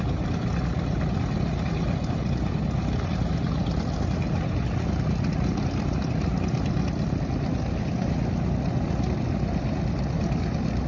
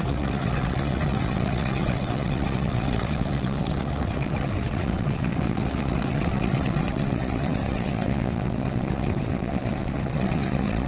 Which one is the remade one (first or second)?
second